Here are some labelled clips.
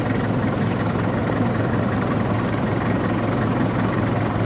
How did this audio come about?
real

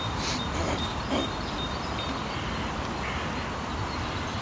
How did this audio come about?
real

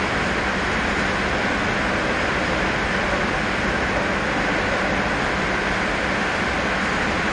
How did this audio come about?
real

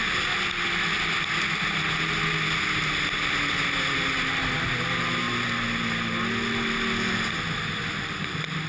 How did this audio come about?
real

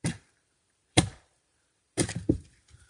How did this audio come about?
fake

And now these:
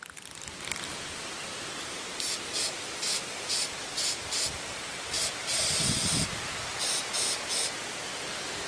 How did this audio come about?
real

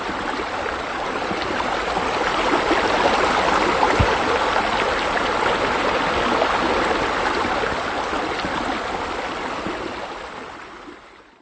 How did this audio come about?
real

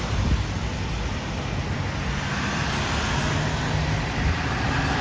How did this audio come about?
real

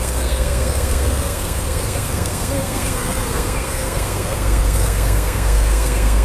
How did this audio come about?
fake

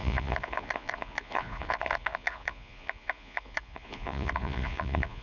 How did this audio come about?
fake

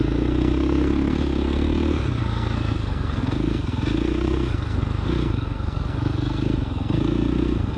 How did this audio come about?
fake